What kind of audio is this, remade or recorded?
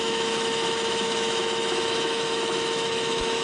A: remade